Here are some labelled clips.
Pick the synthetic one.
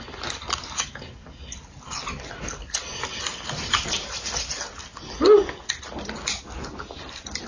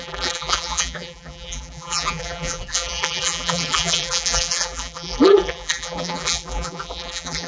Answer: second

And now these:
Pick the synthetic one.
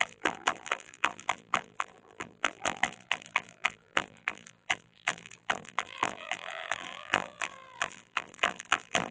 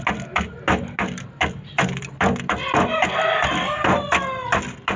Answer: first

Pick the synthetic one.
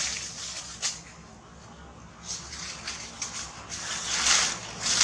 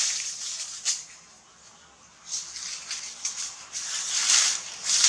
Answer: second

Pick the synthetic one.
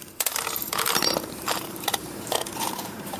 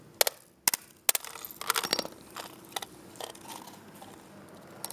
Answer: first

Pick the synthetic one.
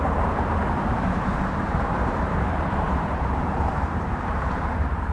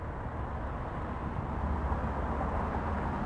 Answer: first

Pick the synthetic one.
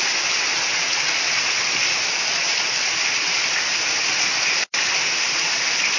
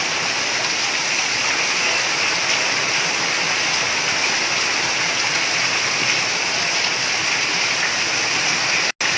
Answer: first